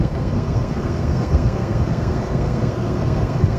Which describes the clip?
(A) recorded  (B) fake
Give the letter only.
B